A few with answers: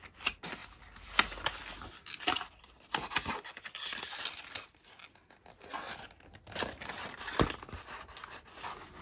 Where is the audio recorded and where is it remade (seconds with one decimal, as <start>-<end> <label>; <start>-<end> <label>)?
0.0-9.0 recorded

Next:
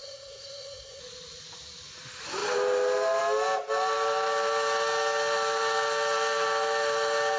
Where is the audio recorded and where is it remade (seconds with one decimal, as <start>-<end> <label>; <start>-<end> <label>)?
0.0-1.0 remade; 1.0-7.4 recorded

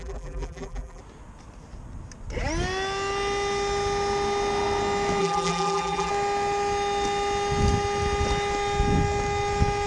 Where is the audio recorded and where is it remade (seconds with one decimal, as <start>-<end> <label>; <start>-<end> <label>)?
0.0-1.0 remade; 1.0-5.2 recorded; 5.2-6.1 remade; 6.1-9.9 recorded